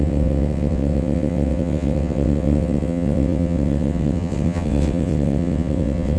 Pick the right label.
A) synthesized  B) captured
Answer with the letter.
A